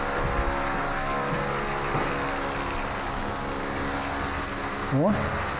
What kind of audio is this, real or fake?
real